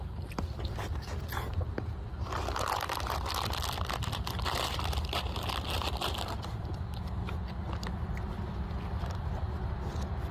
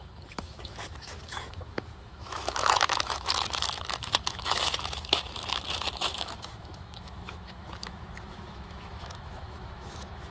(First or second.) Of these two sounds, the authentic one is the first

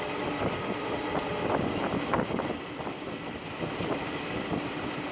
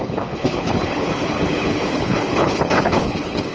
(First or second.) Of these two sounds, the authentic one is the first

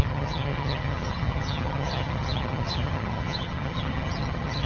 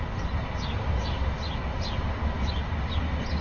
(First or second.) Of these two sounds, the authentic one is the second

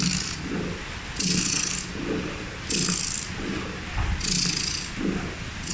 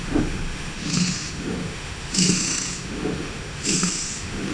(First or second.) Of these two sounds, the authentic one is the first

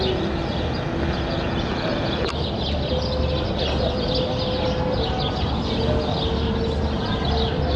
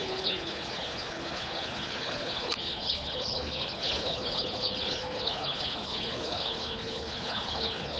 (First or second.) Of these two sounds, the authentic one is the first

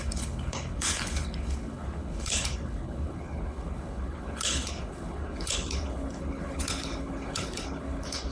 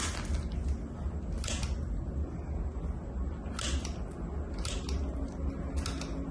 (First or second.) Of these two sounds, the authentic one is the second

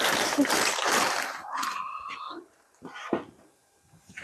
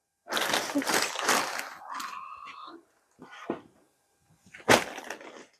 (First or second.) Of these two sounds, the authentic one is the second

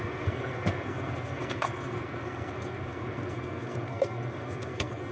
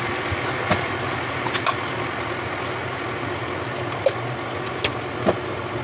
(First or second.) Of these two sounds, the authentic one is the second